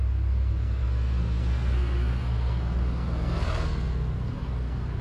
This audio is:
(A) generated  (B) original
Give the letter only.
A